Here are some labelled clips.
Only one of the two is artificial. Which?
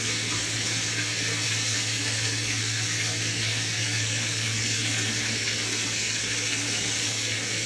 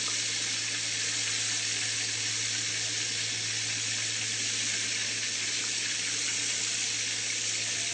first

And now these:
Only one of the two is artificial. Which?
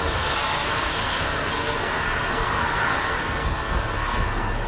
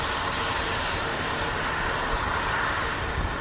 first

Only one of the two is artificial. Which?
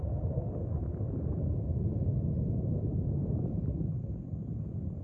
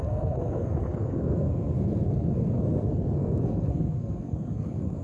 second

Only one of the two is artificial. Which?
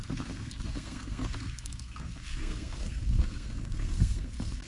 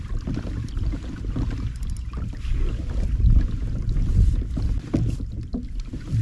first